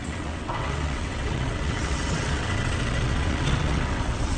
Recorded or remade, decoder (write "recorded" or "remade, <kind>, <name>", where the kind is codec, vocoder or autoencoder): remade, vocoder, WaveNeXt